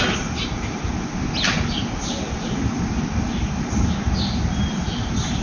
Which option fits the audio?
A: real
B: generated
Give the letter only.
A